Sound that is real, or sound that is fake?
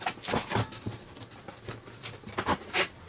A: real